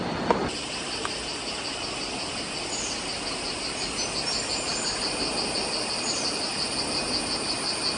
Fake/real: real